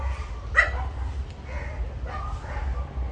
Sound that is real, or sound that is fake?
real